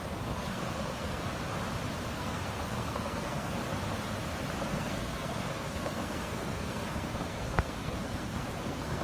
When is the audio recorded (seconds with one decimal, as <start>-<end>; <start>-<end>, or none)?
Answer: 1.2-2.1; 3.6-4.7